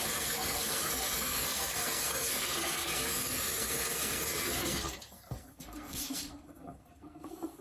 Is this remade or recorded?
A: remade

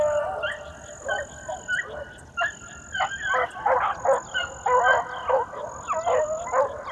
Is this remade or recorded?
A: recorded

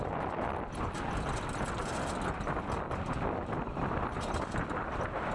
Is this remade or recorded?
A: recorded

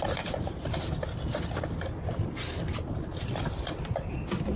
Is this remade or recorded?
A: recorded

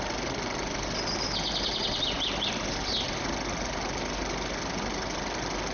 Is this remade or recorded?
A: recorded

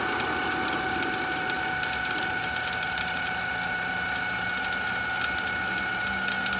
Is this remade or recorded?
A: recorded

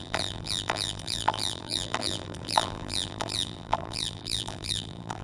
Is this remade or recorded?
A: remade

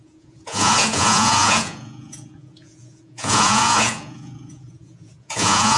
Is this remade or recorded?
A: remade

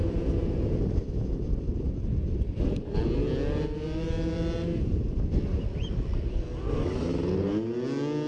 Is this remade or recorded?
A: recorded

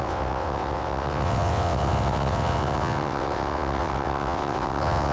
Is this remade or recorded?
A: remade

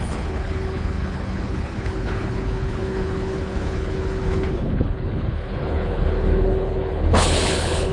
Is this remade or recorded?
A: remade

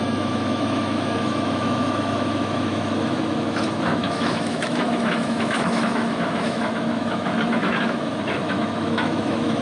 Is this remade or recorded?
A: remade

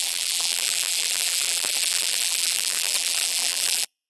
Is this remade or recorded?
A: remade